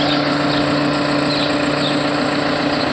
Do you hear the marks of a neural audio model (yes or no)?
no